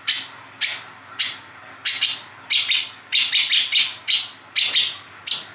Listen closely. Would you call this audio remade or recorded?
recorded